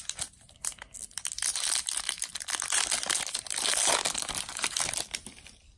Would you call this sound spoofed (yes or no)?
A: no